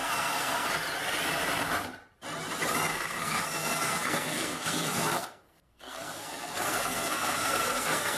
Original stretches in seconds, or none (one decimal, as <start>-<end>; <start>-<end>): 0.7-2.9